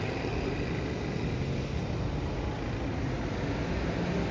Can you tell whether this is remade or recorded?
recorded